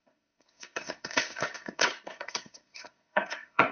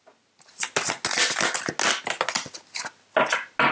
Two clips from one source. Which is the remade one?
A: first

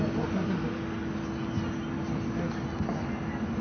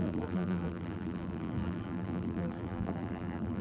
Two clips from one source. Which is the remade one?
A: second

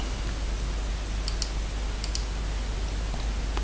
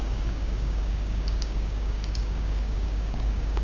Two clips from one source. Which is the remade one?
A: second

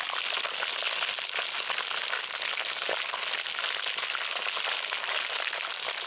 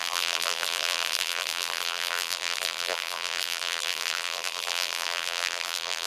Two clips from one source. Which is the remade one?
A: second